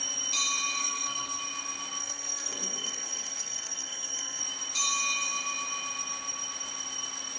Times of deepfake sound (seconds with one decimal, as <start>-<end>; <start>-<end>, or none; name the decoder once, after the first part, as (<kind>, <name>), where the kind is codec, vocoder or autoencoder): 0.8-1.4 (codec, SNAC); 2.0-4.4